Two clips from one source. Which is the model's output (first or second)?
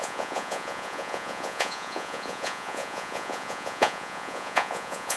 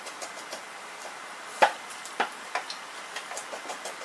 first